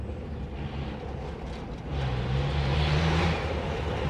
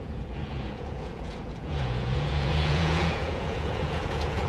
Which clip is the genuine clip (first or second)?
first